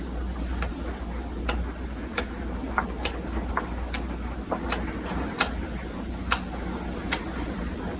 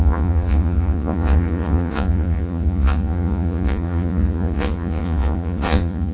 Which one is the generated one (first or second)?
second